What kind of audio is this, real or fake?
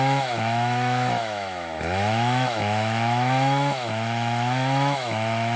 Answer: fake